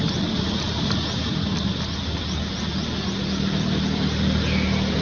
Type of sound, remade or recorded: recorded